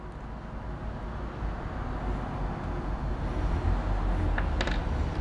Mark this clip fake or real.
real